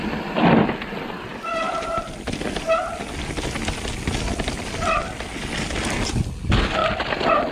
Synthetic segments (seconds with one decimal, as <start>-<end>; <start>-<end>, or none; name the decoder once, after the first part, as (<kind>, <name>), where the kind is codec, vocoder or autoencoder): none